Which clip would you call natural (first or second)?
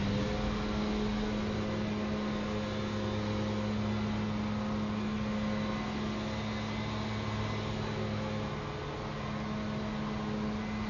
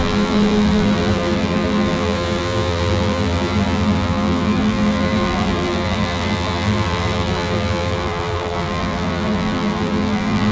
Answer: first